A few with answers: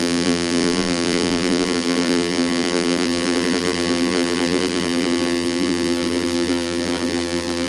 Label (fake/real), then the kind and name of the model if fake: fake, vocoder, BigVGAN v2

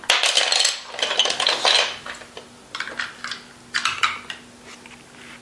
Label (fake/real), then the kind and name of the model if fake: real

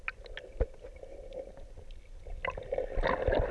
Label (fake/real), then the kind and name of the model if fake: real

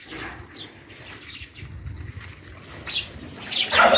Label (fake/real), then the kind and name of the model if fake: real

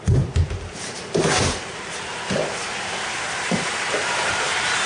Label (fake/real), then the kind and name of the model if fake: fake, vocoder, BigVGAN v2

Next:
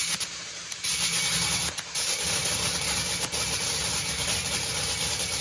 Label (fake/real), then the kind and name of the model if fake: real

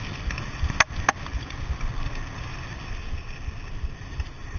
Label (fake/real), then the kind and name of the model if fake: real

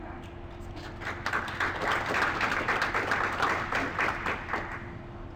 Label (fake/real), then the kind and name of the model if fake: real